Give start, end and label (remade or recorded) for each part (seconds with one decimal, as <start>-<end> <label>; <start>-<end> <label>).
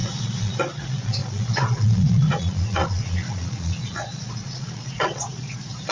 0.0-5.9 remade